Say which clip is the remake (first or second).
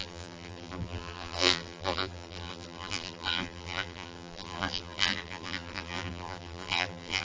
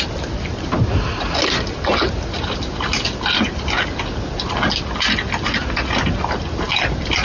first